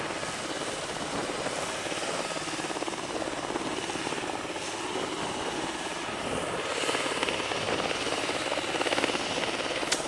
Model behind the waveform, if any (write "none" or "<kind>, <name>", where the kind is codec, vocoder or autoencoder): none